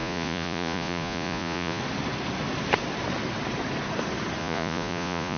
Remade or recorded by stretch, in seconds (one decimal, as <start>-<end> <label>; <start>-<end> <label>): 0.0-1.8 remade; 1.8-4.4 recorded; 4.4-5.4 remade

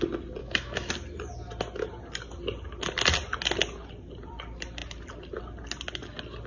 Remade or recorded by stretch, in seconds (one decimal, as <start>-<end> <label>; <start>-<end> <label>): 0.0-0.4 recorded; 0.4-0.9 remade; 0.9-6.5 recorded